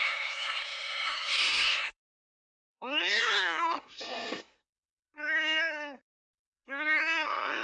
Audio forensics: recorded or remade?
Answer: remade